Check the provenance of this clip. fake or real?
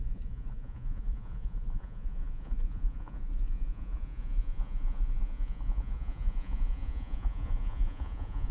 fake